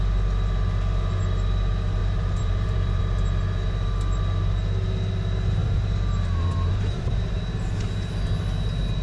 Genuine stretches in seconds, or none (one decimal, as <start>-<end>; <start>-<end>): 0.0-2.0; 3.0-5.6; 7.4-9.0